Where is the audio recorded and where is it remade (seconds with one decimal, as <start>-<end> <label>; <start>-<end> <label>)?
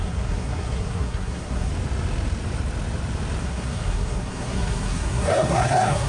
0.0-1.7 remade; 1.7-3.4 recorded; 3.4-6.1 remade